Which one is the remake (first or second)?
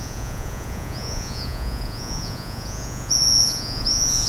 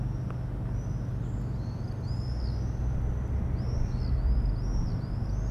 first